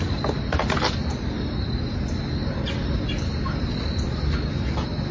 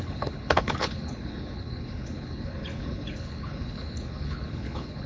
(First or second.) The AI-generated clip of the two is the second